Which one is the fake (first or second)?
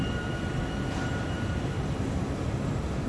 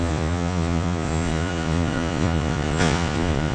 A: second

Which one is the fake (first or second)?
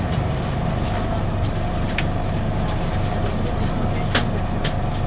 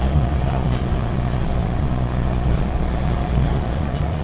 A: second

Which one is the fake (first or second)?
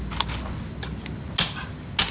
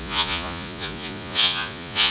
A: second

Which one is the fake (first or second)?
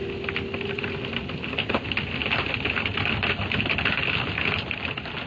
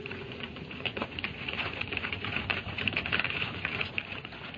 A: second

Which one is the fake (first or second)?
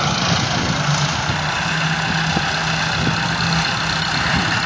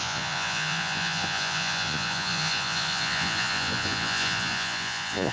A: second